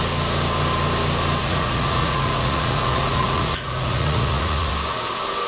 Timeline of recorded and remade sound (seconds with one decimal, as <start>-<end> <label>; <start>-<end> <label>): 0.0-1.4 recorded; 1.4-4.7 remade; 4.7-5.5 recorded